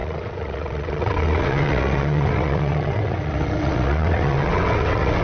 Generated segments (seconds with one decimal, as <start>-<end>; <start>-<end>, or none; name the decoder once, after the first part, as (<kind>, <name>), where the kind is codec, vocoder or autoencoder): 0.0-5.2 (vocoder, WaveNeXt)